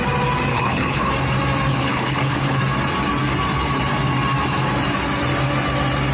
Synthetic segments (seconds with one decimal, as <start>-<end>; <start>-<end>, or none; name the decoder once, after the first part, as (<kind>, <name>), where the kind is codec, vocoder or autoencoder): 0.5-1.1 (codec, HILCodec); 1.7-2.6